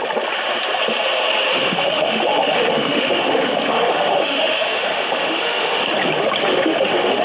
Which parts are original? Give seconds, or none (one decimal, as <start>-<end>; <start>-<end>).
0.0-1.5; 5.8-6.4